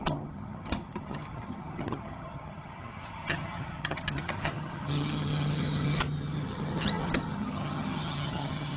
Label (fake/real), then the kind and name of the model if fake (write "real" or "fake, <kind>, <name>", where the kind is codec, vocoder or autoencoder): fake, vocoder, HiFi-GAN